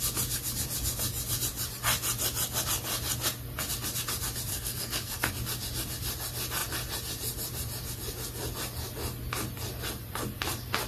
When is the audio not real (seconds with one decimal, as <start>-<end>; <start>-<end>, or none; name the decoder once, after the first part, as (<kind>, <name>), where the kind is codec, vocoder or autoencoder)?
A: 4.5-5.3 (codec, SNAC)